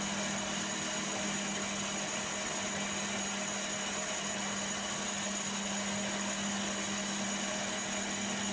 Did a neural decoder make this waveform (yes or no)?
no